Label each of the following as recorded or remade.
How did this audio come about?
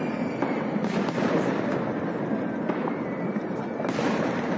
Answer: recorded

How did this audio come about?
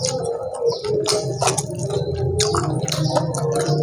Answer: recorded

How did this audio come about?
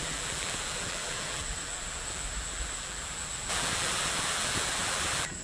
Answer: remade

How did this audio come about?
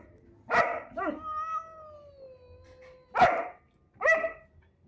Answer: recorded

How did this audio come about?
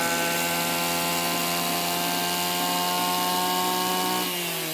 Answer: recorded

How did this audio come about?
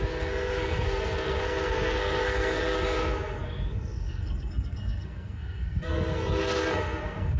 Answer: remade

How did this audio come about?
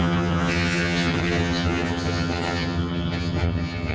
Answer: remade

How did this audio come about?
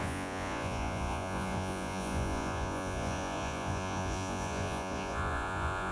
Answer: remade